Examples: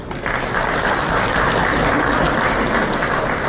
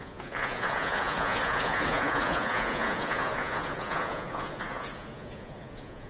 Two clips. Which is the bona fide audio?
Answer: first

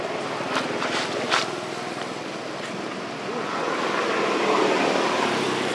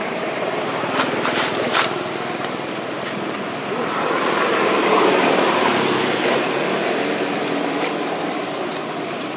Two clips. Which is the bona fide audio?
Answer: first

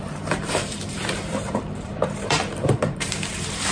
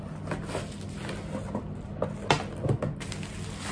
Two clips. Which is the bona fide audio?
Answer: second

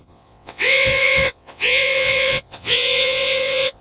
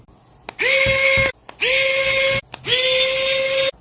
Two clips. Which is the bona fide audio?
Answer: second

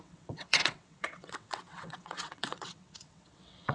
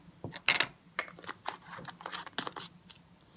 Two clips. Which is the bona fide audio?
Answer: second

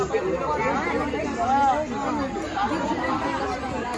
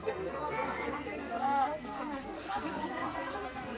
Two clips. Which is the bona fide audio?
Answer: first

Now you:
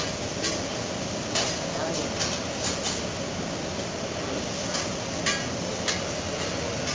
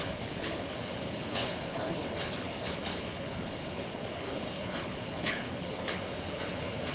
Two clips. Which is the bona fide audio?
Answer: first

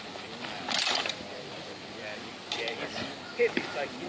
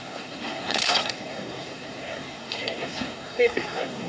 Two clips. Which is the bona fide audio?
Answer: first